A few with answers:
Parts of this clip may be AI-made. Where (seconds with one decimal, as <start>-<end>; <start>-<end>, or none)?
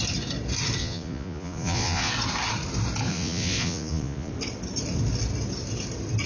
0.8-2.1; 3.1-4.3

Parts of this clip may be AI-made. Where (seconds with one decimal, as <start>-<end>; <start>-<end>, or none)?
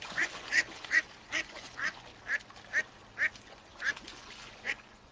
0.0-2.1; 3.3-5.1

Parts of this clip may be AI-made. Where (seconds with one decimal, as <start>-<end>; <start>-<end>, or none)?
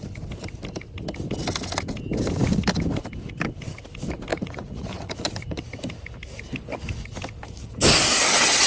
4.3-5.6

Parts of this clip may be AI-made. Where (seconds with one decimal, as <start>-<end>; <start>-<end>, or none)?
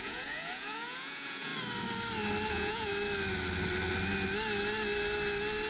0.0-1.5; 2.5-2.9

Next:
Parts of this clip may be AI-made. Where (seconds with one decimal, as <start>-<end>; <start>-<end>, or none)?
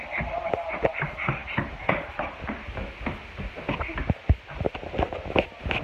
none